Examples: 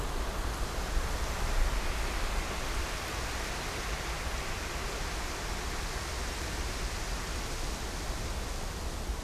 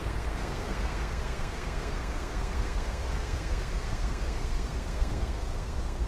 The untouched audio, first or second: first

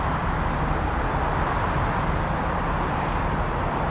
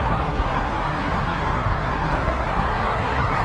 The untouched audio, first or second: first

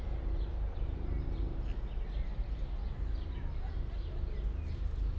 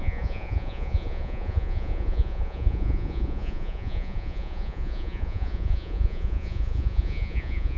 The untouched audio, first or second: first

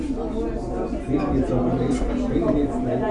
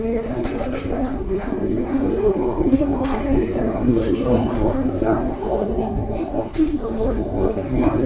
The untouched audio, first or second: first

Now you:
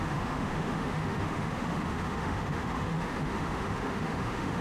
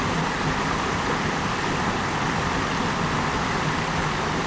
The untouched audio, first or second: second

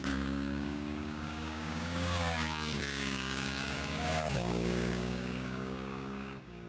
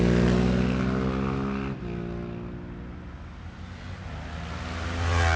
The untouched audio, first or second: second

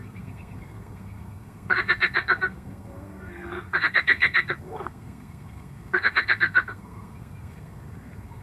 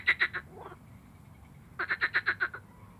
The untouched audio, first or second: second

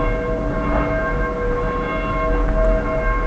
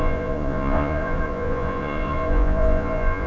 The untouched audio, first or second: first